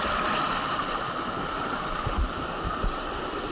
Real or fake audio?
fake